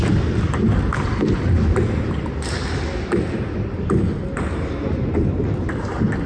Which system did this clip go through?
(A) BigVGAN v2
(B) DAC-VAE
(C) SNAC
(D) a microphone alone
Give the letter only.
D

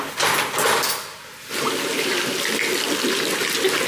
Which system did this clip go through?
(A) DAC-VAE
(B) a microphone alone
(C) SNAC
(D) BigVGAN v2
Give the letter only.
B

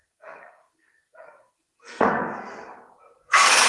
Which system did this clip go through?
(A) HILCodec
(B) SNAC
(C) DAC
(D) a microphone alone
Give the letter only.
B